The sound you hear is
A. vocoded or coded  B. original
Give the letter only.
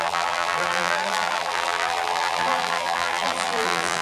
A